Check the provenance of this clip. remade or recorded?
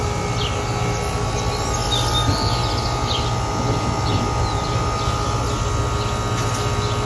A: recorded